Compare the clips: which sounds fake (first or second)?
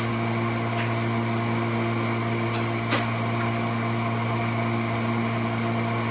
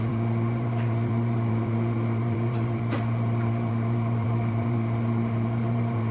second